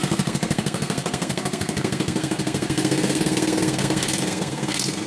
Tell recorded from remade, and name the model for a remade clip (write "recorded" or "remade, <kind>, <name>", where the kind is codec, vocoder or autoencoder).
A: remade, codec, SNAC